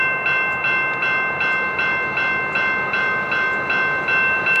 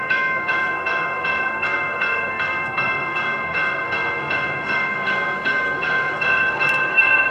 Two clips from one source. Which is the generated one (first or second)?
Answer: second